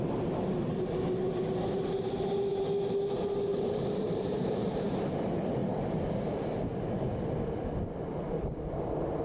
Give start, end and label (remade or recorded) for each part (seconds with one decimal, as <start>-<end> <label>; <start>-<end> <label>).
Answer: 0.0-3.5 recorded; 3.5-5.1 remade; 5.1-9.2 recorded

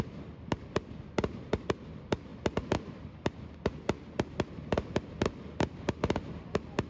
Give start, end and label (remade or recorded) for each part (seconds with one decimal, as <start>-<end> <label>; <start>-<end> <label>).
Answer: 0.0-6.9 recorded

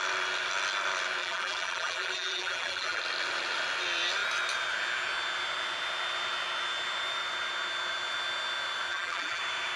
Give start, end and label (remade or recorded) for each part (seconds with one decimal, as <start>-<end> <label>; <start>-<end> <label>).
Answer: 0.0-1.2 recorded; 1.2-3.0 remade; 3.0-8.9 recorded; 8.9-9.4 remade; 9.4-9.8 recorded

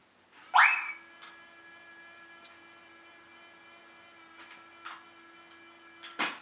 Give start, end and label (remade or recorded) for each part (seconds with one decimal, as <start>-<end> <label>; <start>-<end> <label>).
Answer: 0.0-6.4 recorded

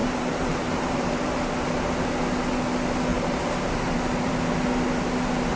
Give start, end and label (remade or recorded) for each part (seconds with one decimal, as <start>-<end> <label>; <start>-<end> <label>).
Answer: 0.0-1.3 remade; 1.3-3.1 recorded; 3.1-4.3 remade; 4.3-5.6 recorded